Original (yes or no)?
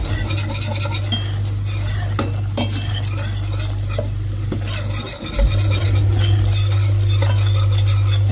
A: yes